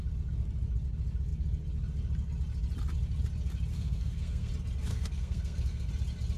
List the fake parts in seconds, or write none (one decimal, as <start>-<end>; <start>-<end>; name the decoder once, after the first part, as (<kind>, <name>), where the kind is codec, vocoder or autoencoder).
3.7-4.5 (codec, SNAC); 4.9-5.9